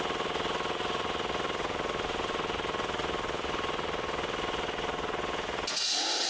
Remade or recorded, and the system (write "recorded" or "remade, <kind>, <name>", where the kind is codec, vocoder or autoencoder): recorded